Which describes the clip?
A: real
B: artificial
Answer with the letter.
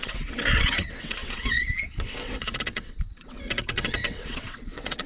B